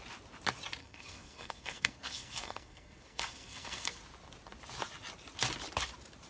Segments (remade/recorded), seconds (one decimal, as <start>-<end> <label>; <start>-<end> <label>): 0.0-0.8 recorded; 0.8-4.0 remade; 4.0-6.3 recorded